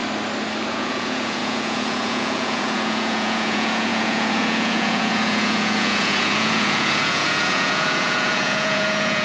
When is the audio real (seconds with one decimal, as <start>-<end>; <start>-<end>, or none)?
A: 0.0-0.7